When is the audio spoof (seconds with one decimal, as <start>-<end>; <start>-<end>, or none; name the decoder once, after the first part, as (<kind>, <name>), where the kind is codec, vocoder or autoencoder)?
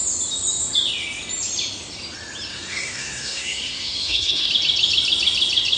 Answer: 2.5-4.5 (codec, SNAC)